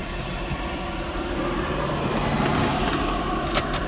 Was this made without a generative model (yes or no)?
no